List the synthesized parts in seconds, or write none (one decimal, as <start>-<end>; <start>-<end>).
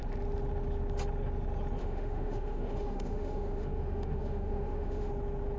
1.8-5.1